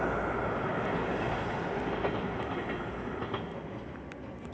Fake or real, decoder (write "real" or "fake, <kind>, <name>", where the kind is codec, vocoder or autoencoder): real